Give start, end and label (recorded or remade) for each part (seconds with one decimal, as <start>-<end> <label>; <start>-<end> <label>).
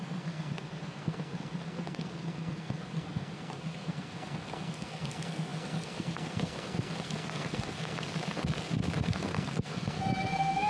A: 0.0-10.7 remade